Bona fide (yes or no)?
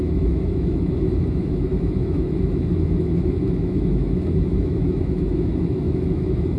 no